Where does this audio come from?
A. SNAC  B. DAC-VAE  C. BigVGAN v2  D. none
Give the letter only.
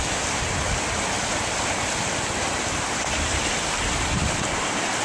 D